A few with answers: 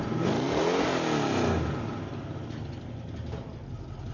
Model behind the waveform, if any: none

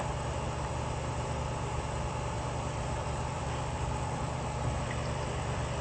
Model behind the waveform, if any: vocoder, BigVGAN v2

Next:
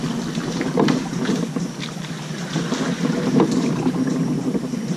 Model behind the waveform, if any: none